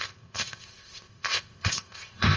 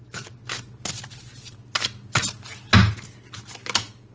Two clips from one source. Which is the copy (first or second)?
first